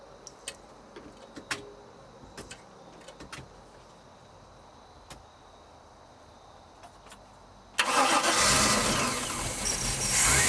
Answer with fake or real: real